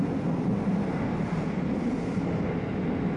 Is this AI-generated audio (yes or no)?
no